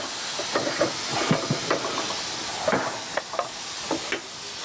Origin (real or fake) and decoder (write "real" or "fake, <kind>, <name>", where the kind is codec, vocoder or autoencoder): real